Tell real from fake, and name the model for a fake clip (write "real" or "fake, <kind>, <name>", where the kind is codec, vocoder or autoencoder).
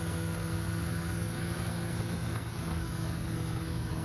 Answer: fake, codec, SNAC